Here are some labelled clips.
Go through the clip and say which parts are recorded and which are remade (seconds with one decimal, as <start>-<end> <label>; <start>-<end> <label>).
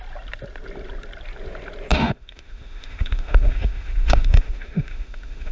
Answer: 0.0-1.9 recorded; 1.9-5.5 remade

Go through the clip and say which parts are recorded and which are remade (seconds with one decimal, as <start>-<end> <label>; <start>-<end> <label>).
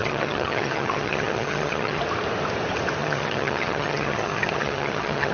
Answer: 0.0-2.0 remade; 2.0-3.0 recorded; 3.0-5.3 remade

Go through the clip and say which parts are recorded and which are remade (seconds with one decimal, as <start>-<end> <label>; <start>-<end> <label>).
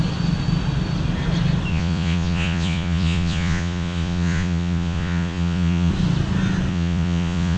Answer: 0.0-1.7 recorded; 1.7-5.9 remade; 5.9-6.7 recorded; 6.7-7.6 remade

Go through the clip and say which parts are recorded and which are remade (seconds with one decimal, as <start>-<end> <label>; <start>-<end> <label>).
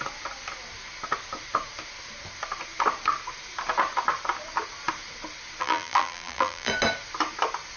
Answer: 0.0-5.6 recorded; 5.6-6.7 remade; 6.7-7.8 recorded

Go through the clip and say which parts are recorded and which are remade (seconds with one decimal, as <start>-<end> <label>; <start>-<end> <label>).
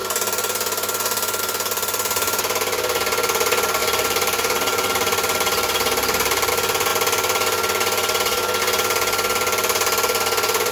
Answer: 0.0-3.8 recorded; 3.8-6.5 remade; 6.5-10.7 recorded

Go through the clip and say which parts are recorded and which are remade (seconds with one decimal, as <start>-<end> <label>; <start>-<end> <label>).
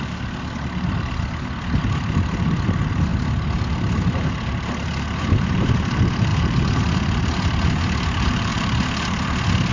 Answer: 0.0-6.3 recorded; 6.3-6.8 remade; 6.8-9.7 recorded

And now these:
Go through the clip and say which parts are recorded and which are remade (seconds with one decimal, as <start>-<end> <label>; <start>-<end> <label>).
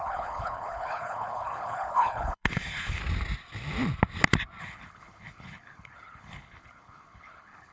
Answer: 0.0-3.0 remade; 3.0-4.6 recorded; 4.6-7.7 remade